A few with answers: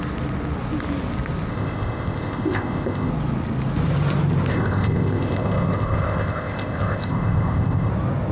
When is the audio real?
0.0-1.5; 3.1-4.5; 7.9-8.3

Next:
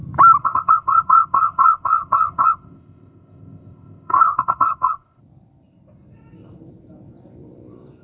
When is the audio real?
0.0-0.4; 5.2-8.0

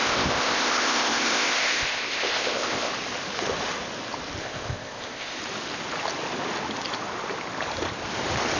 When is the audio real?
2.9-4.4; 5.4-8.6

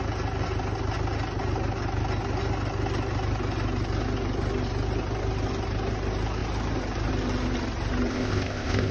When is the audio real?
0.0-8.1

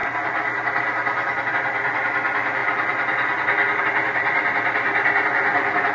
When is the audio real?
0.0-5.9